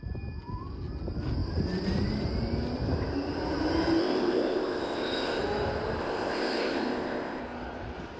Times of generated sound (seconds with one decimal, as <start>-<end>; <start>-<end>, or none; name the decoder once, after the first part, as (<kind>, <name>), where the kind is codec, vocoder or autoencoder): 4.0-5.4 (codec, ZipCodec); 6.0-7.4